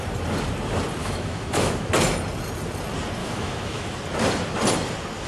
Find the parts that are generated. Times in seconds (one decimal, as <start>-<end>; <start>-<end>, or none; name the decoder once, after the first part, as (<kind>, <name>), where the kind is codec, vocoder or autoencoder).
1.0-1.9 (autoencoder, DAC-VAE); 3.2-3.9